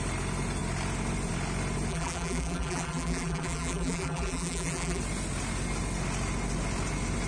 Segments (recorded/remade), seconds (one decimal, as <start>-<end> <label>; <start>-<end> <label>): 0.0-1.9 recorded; 1.9-5.0 remade; 5.0-7.3 recorded

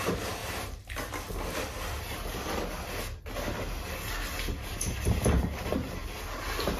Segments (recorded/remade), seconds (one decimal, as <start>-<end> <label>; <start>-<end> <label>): 0.0-6.8 recorded

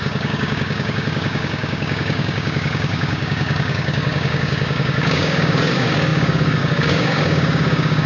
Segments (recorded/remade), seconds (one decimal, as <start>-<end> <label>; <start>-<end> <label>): 0.0-8.1 remade